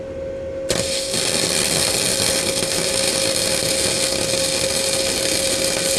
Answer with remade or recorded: recorded